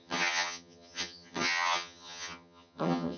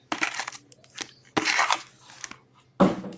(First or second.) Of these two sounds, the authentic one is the second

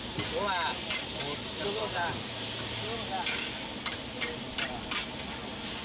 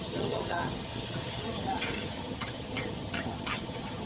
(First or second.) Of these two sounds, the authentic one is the first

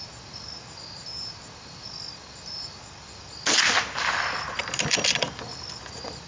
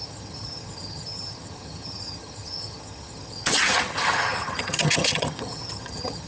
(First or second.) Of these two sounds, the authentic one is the first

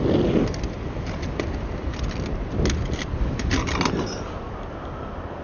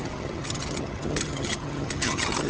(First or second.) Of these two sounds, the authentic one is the first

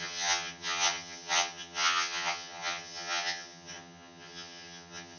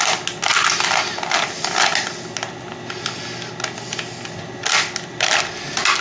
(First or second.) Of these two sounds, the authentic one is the second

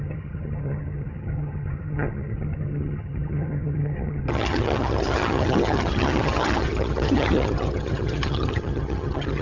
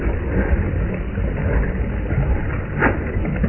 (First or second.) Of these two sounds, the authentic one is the second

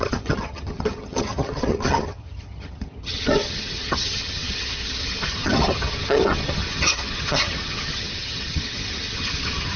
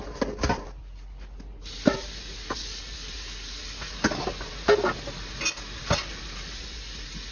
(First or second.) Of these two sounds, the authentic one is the second